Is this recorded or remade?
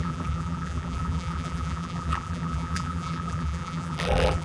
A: remade